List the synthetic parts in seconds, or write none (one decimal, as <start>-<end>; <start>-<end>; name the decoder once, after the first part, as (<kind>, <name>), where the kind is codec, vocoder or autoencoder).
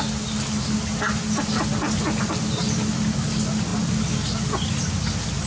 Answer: none